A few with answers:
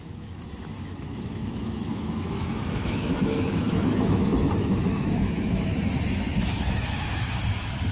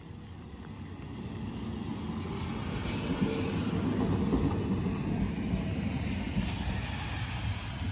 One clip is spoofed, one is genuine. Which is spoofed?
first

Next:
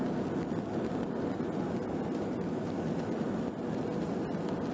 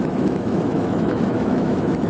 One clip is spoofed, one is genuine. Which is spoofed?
second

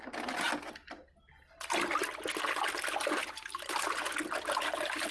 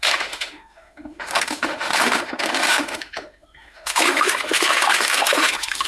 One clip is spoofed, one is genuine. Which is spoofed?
second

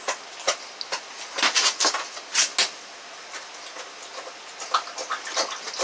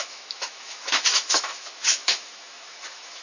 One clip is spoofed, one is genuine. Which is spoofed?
second